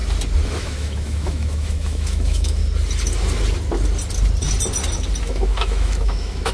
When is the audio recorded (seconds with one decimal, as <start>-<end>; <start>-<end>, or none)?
0.0-0.5; 2.6-5.2